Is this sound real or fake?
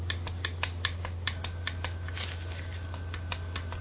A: real